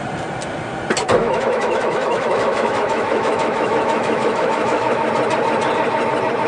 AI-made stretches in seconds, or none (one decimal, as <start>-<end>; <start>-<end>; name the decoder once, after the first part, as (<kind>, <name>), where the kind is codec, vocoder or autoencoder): 1.2-5.1 (autoencoder, DAC-VAE)